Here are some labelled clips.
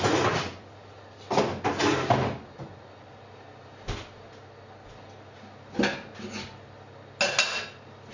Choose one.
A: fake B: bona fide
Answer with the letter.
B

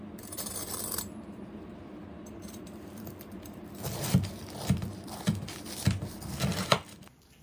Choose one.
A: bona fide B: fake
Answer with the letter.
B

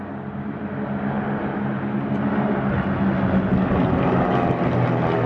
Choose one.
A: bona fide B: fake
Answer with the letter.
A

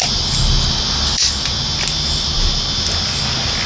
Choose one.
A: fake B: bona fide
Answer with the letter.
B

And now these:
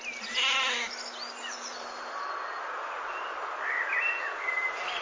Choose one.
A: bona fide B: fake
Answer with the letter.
A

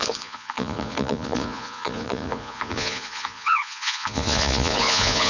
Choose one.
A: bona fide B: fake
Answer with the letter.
B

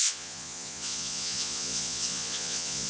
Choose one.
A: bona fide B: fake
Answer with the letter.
B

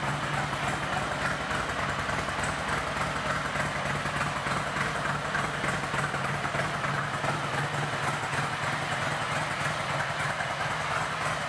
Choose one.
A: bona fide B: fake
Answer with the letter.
A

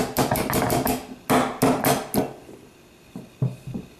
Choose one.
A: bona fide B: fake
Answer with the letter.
A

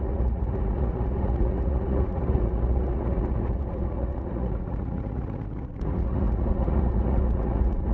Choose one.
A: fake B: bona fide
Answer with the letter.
A